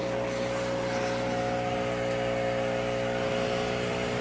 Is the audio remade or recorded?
recorded